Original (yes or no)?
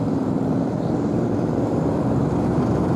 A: no